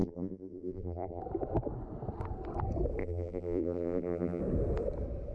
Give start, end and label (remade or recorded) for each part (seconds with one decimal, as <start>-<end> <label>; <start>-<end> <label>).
0.0-1.2 remade; 1.2-3.0 recorded; 3.0-4.4 remade; 4.4-5.3 recorded